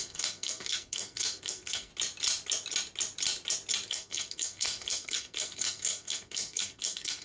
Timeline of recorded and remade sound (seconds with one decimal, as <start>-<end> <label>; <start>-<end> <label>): 0.0-1.9 remade; 1.9-3.9 recorded; 3.9-7.2 remade